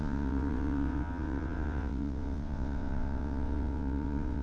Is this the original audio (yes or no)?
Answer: no